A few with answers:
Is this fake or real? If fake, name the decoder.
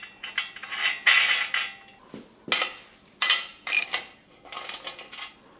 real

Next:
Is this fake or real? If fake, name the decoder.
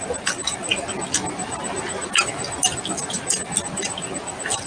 real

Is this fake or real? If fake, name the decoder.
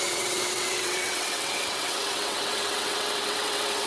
fake, vocoder, WaveNeXt